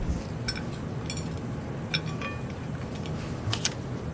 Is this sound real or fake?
real